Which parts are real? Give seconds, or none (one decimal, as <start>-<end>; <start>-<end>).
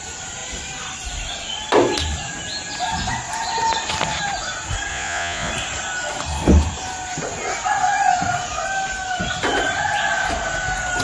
0.0-4.9; 5.5-11.0